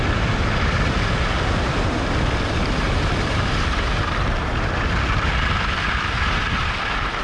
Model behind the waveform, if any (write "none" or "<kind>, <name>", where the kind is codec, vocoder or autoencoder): none